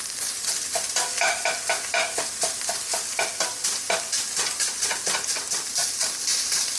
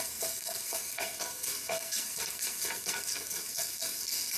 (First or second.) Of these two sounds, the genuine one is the first